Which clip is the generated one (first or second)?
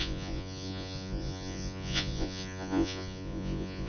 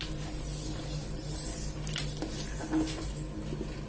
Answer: first